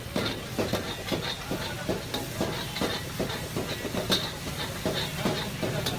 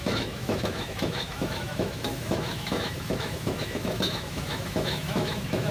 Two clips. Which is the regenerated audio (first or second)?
second